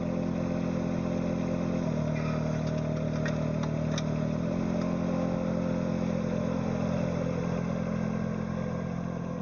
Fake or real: real